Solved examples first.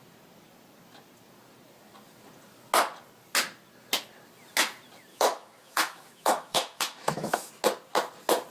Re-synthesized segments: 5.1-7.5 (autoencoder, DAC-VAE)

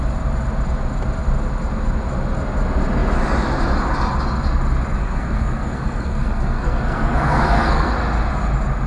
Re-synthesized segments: 5.0-7.9 (codec, SNAC)